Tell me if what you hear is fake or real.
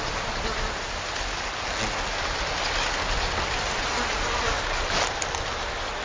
real